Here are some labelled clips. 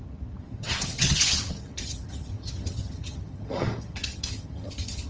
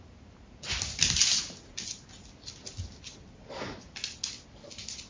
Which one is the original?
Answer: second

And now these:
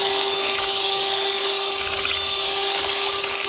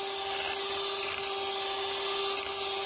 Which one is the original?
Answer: second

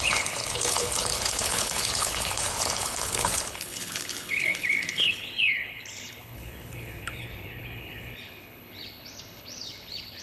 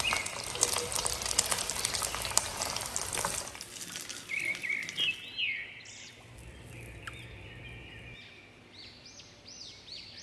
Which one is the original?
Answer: second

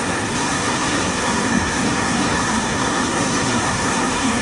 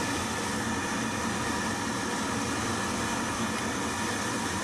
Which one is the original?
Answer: second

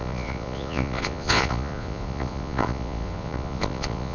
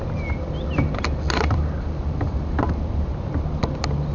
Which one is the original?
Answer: second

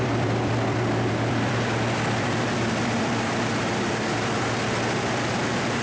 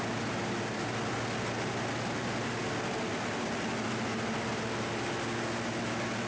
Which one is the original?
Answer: second